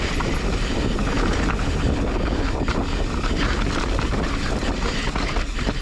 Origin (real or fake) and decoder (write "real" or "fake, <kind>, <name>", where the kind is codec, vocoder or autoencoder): real